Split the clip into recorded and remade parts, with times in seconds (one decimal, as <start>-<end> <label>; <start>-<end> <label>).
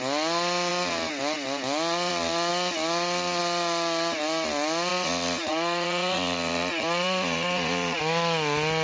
0.0-4.9 recorded; 4.9-8.0 remade; 8.0-8.8 recorded